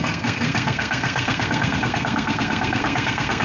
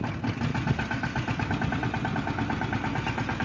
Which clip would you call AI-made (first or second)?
first